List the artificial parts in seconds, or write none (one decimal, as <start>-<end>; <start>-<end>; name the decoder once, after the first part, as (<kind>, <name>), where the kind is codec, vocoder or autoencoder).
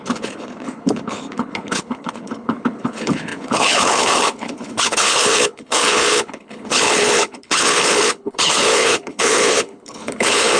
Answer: 0.0-10.6 (codec, HILCodec)